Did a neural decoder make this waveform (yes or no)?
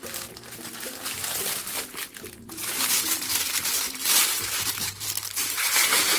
yes